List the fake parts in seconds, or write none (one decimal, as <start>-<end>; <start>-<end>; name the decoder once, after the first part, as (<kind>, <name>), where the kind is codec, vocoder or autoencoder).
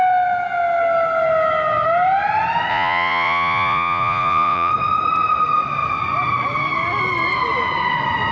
2.7-4.7 (vocoder, Vocos)